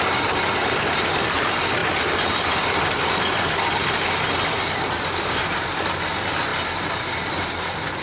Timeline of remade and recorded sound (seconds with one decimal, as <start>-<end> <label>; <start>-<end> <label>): 0.0-8.0 recorded